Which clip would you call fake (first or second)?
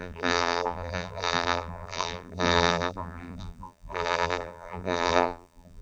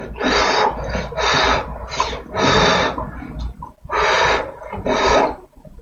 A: first